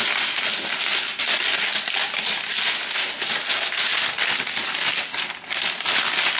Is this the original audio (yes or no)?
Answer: yes